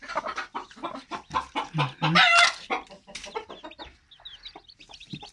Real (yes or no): yes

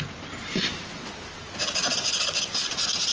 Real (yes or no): yes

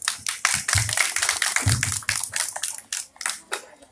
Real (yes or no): yes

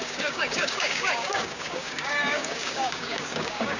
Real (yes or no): no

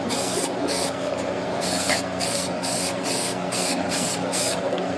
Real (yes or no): no